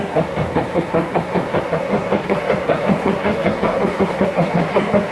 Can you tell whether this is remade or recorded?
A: remade